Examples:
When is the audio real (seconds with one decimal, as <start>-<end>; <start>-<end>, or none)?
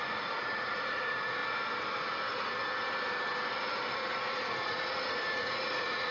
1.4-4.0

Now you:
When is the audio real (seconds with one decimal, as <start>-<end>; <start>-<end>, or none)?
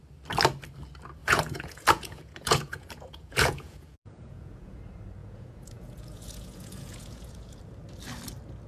0.0-1.2; 4.8-5.2; 7.6-8.7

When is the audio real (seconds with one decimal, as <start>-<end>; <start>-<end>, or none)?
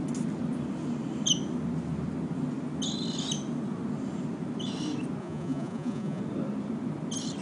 0.0-5.2; 6.2-7.4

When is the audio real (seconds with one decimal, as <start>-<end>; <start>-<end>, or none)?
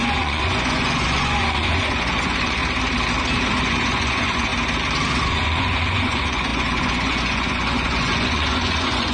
2.6-3.6; 4.5-5.2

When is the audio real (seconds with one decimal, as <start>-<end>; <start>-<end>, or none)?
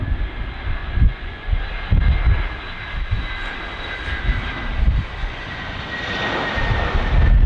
0.0-0.8; 1.6-5.2; 5.8-7.5